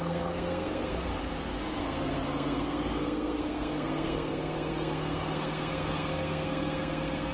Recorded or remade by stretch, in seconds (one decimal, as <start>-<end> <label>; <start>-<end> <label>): 0.0-1.1 remade; 1.1-1.8 recorded; 1.8-7.3 remade